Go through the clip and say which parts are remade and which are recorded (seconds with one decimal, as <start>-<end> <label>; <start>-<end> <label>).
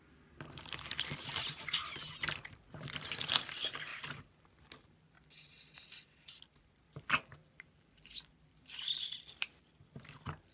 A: 0.0-10.5 remade